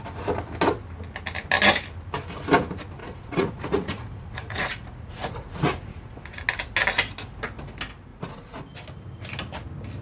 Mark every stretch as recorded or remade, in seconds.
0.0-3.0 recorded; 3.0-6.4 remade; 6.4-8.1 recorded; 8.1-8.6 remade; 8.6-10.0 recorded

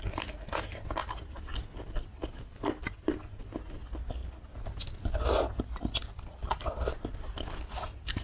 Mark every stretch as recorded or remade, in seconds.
0.0-8.2 recorded

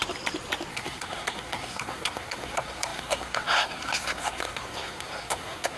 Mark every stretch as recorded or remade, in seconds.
0.0-0.7 recorded; 0.7-5.8 remade